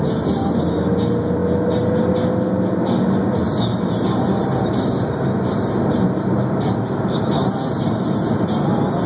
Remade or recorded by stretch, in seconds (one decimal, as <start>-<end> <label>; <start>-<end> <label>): 0.0-4.3 recorded; 4.3-8.5 remade; 8.5-9.1 recorded

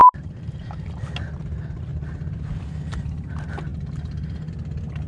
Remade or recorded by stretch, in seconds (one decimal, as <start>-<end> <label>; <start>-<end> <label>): 0.0-1.0 remade; 1.0-3.7 recorded; 3.7-4.5 remade; 4.5-5.1 recorded

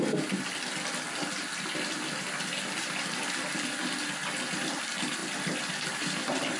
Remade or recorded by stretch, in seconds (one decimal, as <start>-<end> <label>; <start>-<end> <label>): 0.0-6.6 recorded

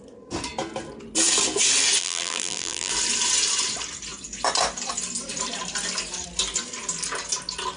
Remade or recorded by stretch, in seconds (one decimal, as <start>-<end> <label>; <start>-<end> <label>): 0.0-2.0 recorded; 2.0-2.9 remade; 2.9-7.8 recorded

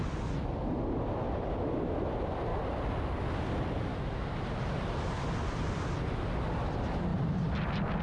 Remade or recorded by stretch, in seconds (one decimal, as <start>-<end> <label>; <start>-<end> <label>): 0.0-2.5 recorded; 2.5-3.2 remade; 3.2-3.9 recorded; 3.9-5.2 remade; 5.2-8.0 recorded

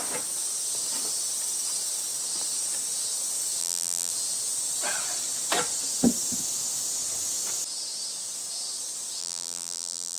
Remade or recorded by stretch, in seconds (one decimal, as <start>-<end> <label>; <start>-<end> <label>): 0.0-3.6 recorded; 3.6-4.1 remade; 4.1-9.2 recorded; 9.2-10.2 remade

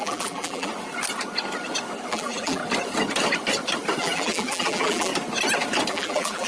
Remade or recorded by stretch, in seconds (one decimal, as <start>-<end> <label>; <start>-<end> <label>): 0.0-0.7 remade; 0.7-2.1 recorded; 2.1-2.6 remade; 2.6-4.0 recorded; 4.0-5.1 remade; 5.1-5.9 recorded; 5.9-6.5 remade